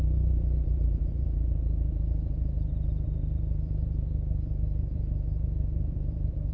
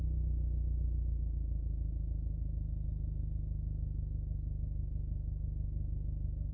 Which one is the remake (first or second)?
first